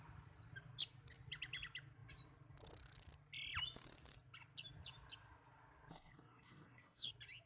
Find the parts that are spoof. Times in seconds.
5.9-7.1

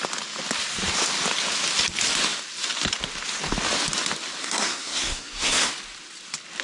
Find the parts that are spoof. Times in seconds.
4.4-5.7

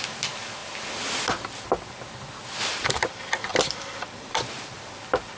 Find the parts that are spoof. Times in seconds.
3.5-4.4